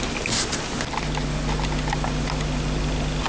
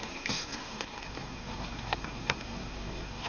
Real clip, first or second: first